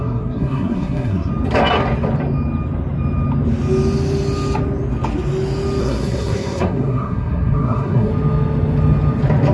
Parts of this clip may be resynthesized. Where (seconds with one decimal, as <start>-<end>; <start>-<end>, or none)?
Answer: 0.0-1.3; 5.8-8.1